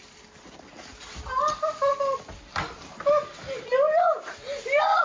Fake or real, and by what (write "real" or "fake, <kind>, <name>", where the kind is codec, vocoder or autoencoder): real